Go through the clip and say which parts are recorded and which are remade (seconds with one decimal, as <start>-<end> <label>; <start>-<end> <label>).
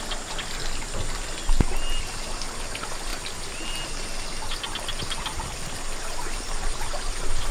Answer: 0.0-7.5 recorded